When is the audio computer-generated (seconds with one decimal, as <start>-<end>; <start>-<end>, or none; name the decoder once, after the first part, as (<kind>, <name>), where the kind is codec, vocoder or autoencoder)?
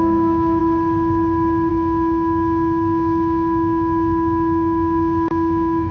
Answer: 0.0-0.6 (autoencoder, DAC-VAE); 1.7-5.9